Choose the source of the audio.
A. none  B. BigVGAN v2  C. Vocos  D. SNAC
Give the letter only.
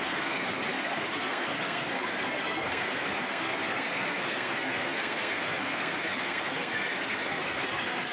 D